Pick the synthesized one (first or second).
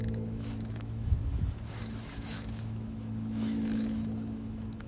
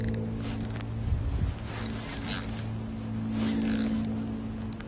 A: first